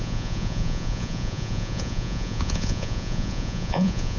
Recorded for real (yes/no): no